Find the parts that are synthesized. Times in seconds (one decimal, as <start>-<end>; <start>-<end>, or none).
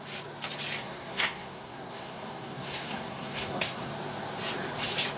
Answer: 0.8-3.9